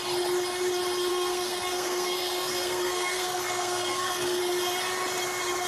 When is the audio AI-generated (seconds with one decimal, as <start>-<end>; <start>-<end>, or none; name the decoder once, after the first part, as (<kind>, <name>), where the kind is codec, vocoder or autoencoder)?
1.1-4.4 (codec, SNAC)